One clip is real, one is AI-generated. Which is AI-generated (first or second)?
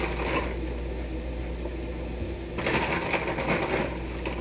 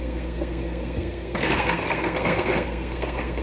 second